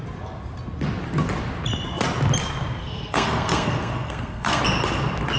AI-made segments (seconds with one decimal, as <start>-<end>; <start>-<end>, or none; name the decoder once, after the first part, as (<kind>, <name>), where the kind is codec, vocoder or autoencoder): 2.8-4.6 (codec, SNAC)